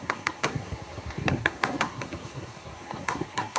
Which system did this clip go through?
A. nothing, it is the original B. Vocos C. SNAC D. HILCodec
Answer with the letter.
C